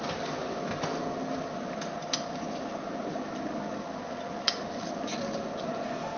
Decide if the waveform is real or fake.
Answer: real